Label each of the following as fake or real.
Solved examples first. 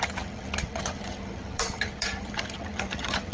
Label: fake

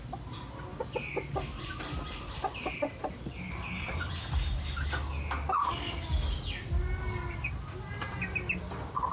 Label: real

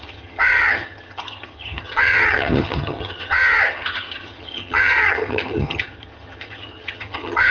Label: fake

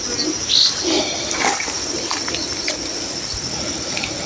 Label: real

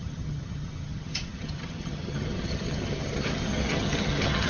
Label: fake